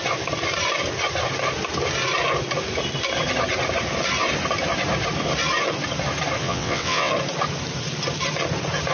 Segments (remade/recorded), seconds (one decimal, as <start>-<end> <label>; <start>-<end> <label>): 0.0-6.4 recorded; 6.4-7.1 remade; 7.1-8.9 recorded